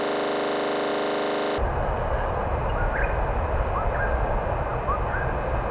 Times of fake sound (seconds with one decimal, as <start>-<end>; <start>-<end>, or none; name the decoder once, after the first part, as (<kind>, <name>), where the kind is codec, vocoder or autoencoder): none